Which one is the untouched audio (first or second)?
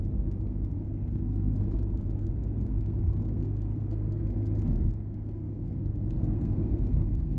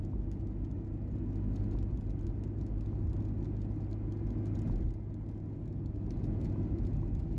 second